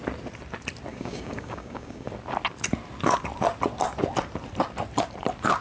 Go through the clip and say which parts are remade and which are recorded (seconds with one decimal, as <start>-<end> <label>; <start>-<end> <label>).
0.0-0.9 recorded; 0.9-2.1 remade; 2.1-5.6 recorded